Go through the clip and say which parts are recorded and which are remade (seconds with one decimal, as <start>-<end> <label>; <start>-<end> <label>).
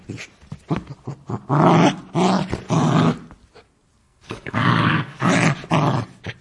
0.0-4.0 recorded; 4.0-5.3 remade; 5.3-6.4 recorded